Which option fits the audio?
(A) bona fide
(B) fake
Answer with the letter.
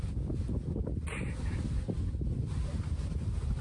A